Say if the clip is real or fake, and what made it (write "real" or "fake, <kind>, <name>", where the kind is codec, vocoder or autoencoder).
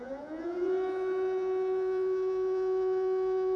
fake, vocoder, Vocos